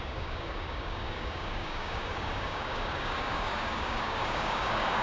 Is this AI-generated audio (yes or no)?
yes